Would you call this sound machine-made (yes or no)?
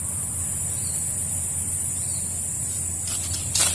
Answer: no